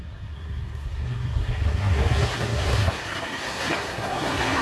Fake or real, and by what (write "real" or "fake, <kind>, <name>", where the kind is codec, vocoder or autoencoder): fake, codec, SNAC